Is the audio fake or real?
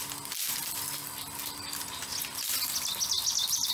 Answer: real